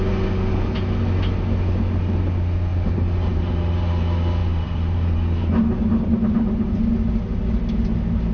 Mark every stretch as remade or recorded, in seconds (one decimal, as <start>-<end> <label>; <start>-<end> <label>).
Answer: 0.0-2.7 recorded; 2.7-3.9 remade; 3.9-4.4 recorded; 4.4-6.8 remade; 6.8-8.3 recorded